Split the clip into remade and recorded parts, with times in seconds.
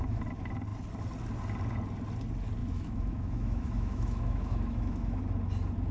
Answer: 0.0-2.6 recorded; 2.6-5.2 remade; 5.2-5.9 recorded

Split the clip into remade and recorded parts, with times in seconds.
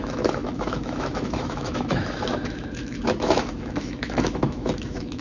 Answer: 0.0-5.2 remade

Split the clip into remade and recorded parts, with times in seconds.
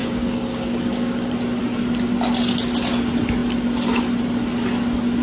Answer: 0.0-1.3 remade; 1.3-5.2 recorded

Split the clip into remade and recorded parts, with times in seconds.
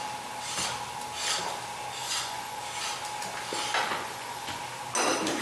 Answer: 0.0-2.0 recorded; 2.0-2.6 remade; 2.6-3.8 recorded; 3.8-4.6 remade; 4.6-5.4 recorded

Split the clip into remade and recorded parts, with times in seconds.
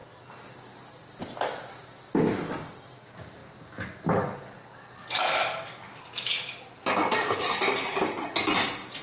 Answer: 0.0-9.0 recorded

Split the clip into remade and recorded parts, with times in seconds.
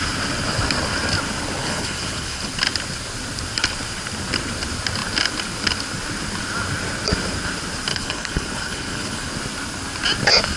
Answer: 0.0-1.6 recorded; 1.6-2.5 remade; 2.5-7.9 recorded; 7.9-9.3 remade; 9.3-10.6 recorded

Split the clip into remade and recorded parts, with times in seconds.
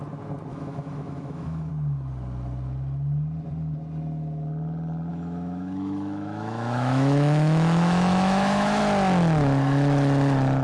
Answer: 0.0-0.5 recorded; 0.5-1.7 remade; 1.7-5.1 recorded; 5.1-8.8 remade; 8.8-10.6 recorded